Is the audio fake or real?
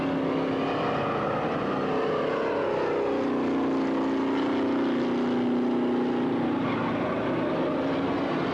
real